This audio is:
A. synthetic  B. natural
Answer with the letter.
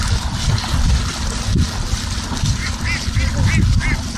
B